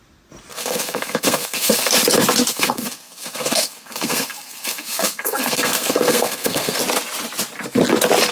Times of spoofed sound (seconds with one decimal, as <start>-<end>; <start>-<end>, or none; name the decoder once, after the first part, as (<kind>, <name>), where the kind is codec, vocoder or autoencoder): 0.5-1.9 (codec, SNAC); 2.5-6.8